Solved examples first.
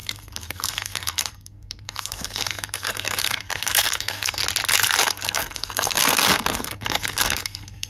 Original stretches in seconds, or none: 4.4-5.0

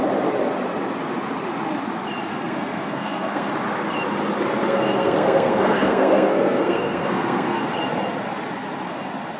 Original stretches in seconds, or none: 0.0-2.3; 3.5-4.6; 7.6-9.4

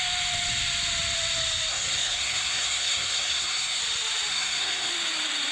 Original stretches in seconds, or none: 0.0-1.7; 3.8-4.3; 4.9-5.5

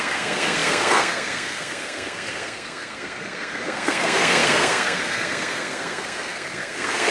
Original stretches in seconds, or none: none

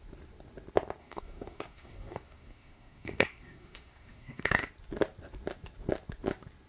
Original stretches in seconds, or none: 0.0-1.0; 4.5-6.7

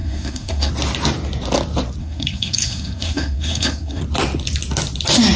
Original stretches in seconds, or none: 0.7-2.0; 4.0-5.4

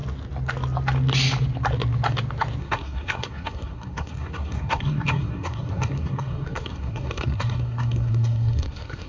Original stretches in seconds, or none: 0.0-2.6